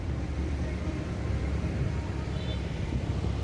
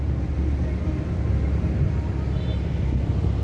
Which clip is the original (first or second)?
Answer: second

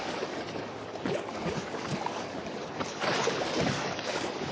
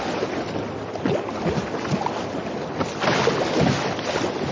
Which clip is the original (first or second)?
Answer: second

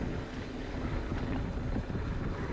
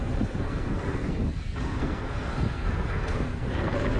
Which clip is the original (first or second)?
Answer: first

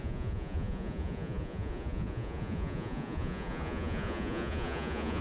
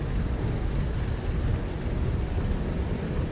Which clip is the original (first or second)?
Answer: second